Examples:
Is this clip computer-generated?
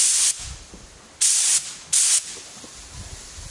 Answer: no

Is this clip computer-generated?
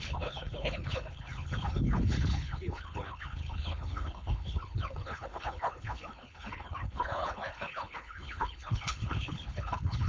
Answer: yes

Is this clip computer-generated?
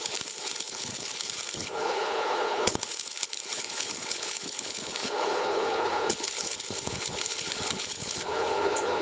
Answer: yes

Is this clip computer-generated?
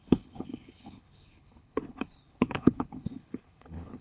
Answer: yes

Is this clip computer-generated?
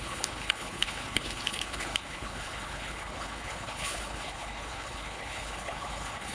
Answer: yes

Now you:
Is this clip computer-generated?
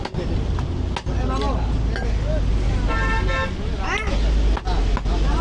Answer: no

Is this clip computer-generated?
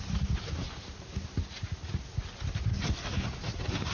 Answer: no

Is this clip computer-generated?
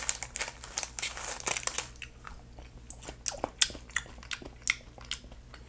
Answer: no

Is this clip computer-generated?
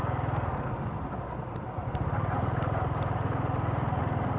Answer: no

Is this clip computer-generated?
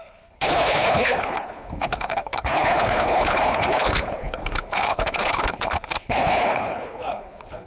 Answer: yes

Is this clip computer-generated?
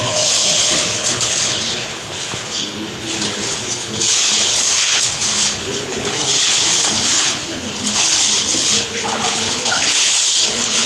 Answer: yes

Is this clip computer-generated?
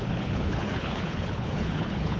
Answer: yes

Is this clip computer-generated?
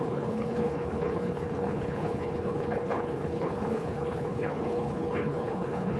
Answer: yes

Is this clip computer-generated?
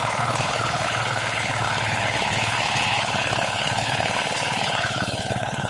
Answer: yes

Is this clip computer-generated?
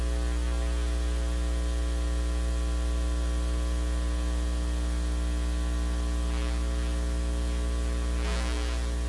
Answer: no